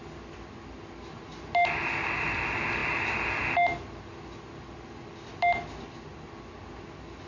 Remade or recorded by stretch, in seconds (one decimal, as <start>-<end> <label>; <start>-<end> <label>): 0.0-7.3 recorded